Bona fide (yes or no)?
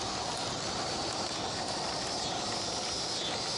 yes